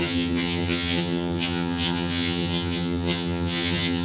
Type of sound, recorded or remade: remade